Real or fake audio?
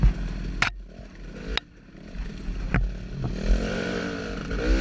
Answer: real